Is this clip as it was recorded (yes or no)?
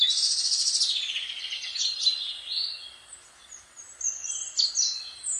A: yes